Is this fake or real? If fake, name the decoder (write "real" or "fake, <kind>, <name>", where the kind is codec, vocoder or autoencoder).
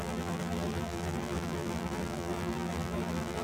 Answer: fake, vocoder, BigVGAN v2